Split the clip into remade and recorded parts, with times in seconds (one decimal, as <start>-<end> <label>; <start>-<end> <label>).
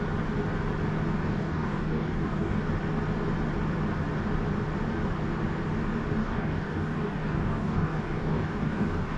0.0-1.2 recorded; 1.2-2.6 remade; 2.6-6.2 recorded; 6.2-9.2 remade